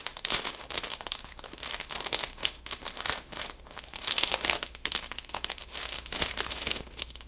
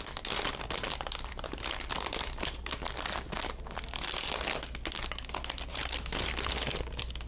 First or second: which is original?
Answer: second